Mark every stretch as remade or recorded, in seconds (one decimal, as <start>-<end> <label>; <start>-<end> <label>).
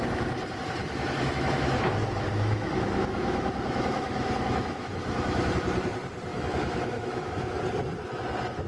0.0-0.8 recorded; 0.8-5.5 remade; 5.5-6.3 recorded; 6.3-7.5 remade; 7.5-8.7 recorded